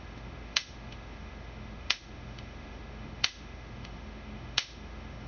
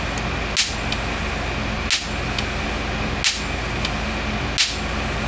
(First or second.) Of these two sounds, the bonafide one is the second